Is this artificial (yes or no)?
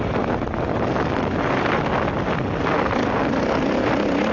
no